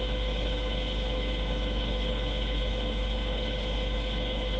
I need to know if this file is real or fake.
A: fake